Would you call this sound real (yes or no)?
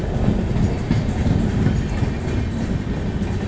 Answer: yes